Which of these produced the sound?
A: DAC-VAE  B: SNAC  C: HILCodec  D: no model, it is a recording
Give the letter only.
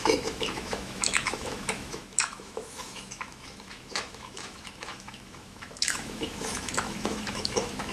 A